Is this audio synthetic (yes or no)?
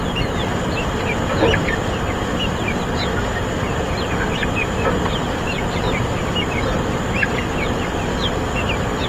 no